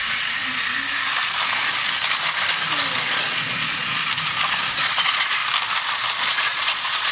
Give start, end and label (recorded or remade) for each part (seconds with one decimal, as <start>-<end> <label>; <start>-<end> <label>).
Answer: 0.0-0.4 remade; 0.4-3.0 recorded; 3.0-4.0 remade; 4.0-4.7 recorded; 4.7-5.4 remade; 5.4-6.2 recorded; 6.2-7.1 remade